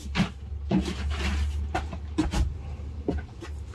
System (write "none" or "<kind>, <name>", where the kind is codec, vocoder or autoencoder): none